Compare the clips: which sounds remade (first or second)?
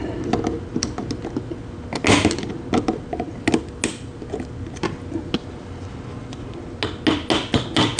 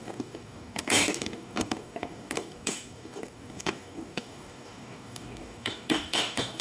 second